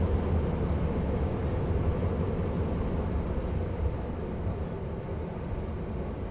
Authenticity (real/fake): real